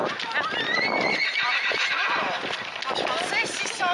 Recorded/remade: recorded